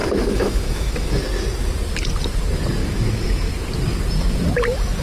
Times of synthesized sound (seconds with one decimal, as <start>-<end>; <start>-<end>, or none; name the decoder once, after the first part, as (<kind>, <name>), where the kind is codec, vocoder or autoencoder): 0.0-1.2 (autoencoder, DAC-VAE); 2.8-3.5